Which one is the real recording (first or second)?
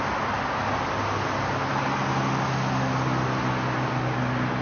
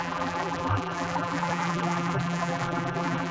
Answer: first